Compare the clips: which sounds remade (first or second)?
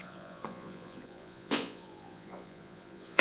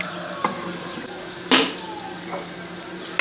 first